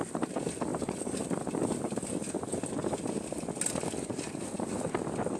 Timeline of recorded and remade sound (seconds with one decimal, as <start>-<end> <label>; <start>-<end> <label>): 0.0-5.4 recorded